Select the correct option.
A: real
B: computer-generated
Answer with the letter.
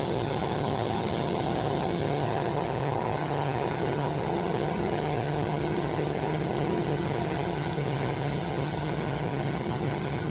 B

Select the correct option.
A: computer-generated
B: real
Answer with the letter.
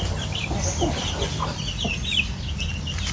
B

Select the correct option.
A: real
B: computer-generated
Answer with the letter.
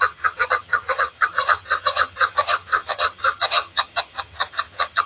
B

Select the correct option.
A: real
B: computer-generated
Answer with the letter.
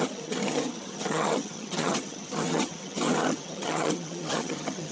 B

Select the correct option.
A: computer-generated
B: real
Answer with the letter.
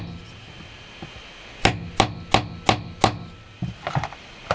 B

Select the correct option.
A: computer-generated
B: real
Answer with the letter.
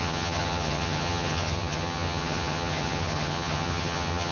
A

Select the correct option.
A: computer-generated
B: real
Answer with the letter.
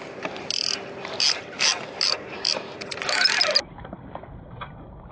B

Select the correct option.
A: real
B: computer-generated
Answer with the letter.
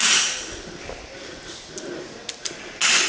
A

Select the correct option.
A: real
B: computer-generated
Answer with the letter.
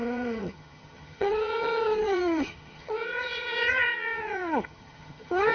B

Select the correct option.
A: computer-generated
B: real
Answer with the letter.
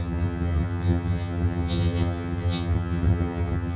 A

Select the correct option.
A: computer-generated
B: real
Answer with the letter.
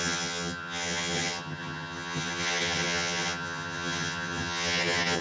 A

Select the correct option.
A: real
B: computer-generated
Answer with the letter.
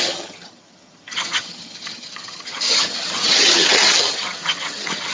B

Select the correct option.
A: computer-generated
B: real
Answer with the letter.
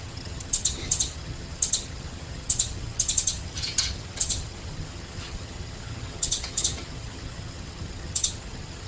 A